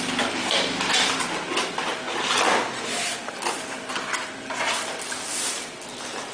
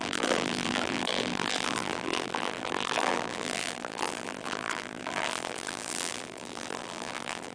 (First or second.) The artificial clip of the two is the second